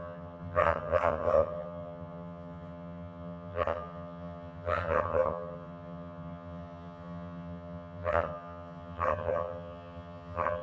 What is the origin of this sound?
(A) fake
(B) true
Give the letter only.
A